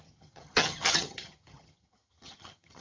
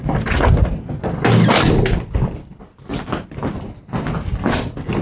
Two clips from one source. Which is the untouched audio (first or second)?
second